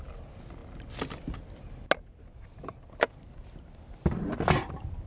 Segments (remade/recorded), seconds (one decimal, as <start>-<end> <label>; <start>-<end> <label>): 0.0-5.1 recorded